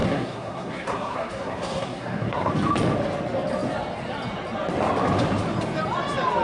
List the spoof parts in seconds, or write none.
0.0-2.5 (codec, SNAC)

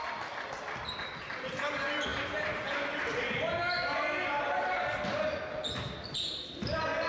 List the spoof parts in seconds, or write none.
none

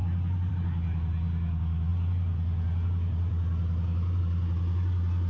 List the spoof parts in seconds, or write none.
none

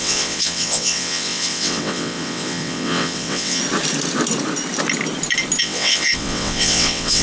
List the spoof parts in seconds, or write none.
0.0-3.6 (vocoder, WaveNeXt); 5.6-7.2

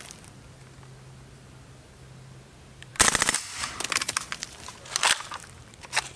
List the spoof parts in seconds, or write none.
none

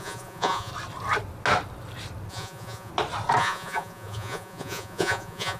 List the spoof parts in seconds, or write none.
0.0-0.7 (vocoder, Vocos); 2.3-2.9; 3.4-5.6

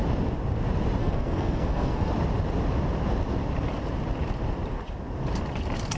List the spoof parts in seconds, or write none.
1.0-2.1 (codec, SNAC)

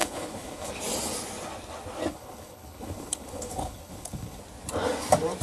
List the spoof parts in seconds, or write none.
0.0-0.7 (codec, HILCodec); 2.1-4.4